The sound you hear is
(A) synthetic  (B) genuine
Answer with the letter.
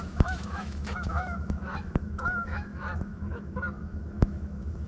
A